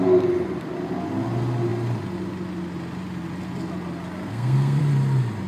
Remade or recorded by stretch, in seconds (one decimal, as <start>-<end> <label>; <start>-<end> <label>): 0.0-4.2 recorded; 4.2-4.8 remade; 4.8-5.5 recorded